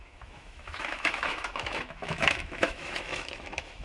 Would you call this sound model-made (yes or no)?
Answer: yes